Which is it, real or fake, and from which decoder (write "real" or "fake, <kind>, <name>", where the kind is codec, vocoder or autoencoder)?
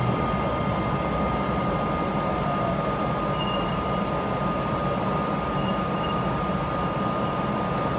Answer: real